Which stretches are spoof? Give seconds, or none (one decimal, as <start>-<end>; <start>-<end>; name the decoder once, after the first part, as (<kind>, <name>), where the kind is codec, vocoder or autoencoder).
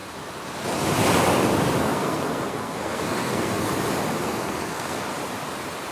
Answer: 1.8-3.7 (codec, SNAC); 4.2-5.1